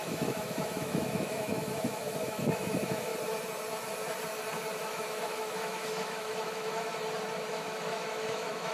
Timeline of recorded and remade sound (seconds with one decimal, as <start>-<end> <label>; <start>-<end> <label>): 0.0-3.1 remade; 3.1-4.8 recorded; 4.8-6.9 remade; 6.9-7.5 recorded; 7.5-8.7 remade